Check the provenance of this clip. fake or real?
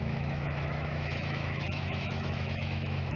fake